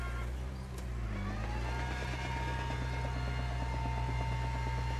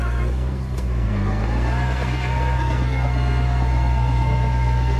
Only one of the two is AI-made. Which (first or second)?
second